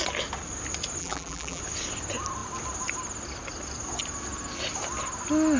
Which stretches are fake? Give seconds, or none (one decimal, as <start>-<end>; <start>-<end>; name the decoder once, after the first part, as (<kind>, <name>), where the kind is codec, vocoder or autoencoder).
1.0-1.6 (vocoder, BigVGAN v2)